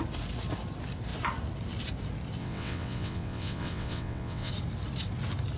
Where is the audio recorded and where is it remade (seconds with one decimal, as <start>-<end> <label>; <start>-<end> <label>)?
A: 0.0-2.4 recorded; 2.4-4.5 remade; 4.5-5.6 recorded